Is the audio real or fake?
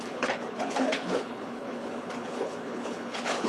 fake